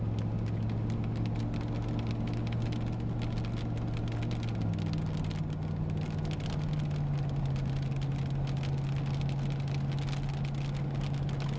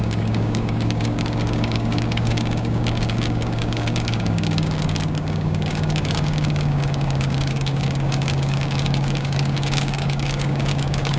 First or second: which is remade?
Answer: second